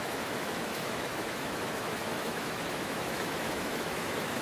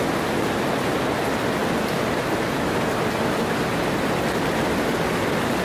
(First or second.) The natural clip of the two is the second